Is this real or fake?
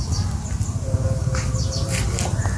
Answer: real